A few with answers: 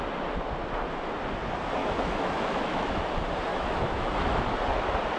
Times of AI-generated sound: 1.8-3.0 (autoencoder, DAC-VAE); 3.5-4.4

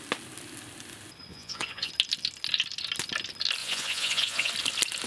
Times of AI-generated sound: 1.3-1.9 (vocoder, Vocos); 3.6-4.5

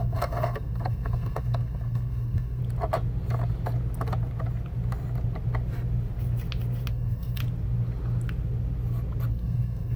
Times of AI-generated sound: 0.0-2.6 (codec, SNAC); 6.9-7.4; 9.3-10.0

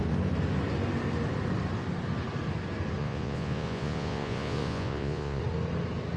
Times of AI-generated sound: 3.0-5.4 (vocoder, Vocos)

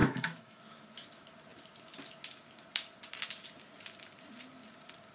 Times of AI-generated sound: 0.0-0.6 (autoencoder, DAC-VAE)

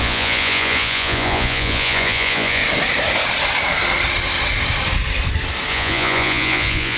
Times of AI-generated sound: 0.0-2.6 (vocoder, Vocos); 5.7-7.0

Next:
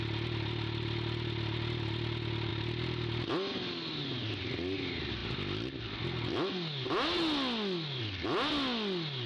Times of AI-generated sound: none

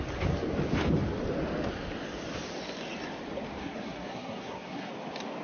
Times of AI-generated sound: 3.6-4.9 (codec, SNAC)